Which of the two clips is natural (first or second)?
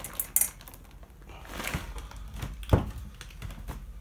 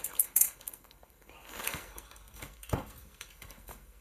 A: first